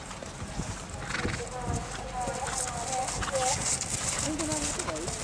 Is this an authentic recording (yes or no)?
yes